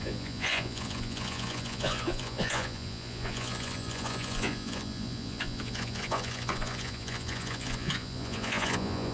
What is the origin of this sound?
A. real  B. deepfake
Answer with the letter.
B